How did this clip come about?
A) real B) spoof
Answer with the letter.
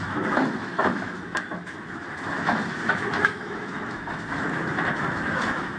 B